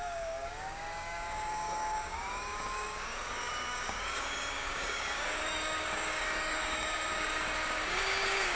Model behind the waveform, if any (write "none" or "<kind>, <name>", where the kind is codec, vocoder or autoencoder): codec, DAC